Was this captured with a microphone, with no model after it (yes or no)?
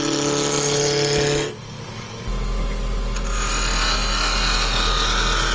yes